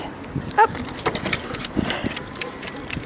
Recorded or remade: recorded